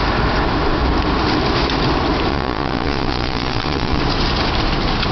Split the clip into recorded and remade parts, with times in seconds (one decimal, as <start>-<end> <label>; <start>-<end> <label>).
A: 0.0-2.3 recorded; 2.3-4.0 remade; 4.0-5.1 recorded